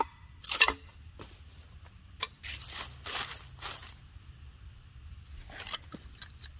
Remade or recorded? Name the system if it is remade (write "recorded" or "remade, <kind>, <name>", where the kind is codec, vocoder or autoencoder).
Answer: recorded